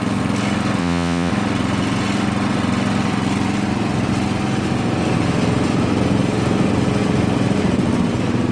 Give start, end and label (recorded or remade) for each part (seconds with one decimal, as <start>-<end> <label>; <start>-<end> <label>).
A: 0.0-0.8 recorded; 0.8-1.3 remade; 1.3-8.5 recorded